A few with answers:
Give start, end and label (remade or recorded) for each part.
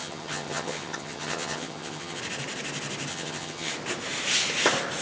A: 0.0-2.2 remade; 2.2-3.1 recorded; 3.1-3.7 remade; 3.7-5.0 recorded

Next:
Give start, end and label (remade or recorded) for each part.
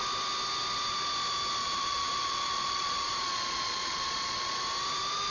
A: 0.0-1.6 recorded; 1.6-4.6 remade; 4.6-5.3 recorded